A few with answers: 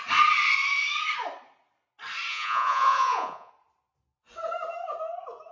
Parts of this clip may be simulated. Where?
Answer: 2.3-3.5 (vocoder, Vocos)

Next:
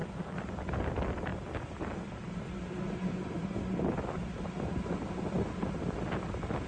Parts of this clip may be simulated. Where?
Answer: none

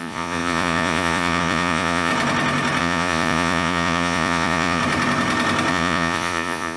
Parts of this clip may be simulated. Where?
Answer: 0.0-2.1 (vocoder, Vocos); 2.8-4.8; 5.7-6.8

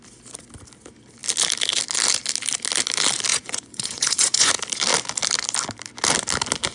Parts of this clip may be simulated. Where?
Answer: 3.3-4.5 (vocoder, Vocos)

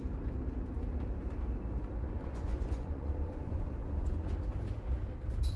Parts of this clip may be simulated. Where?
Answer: 2.2-4.4 (vocoder, Vocos)

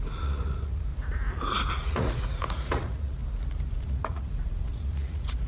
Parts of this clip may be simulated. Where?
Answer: 0.0-0.9 (vocoder, Vocos); 1.7-3.2; 3.7-5.5

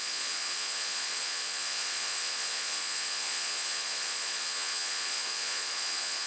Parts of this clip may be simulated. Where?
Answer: 0.0-6.3 (vocoder, Vocos)